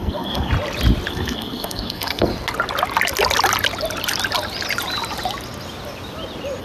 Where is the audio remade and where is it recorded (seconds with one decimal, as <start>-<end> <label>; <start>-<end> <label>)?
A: 0.0-0.5 remade; 0.5-1.1 recorded; 1.1-2.3 remade; 2.3-6.6 recorded